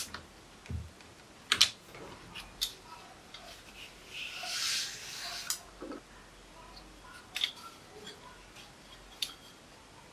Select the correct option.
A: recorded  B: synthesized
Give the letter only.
A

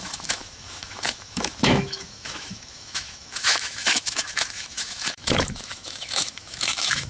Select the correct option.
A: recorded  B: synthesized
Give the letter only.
B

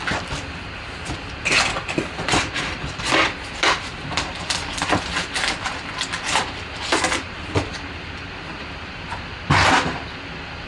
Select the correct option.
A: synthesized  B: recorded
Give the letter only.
B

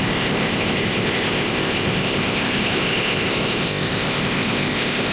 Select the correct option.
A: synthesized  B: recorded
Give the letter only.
A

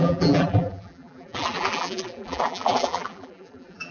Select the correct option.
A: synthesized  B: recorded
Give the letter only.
A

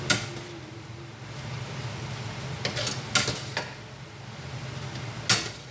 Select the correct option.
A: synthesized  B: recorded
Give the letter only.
B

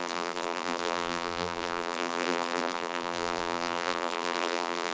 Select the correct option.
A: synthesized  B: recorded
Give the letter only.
A